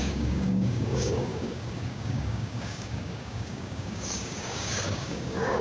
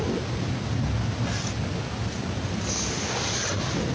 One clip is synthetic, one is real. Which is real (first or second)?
second